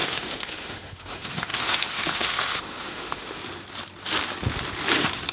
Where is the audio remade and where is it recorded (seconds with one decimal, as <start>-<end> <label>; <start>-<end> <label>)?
0.0-3.4 remade; 3.4-5.3 recorded